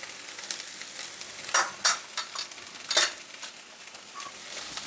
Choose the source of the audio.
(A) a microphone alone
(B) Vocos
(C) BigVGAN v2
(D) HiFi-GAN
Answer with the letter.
A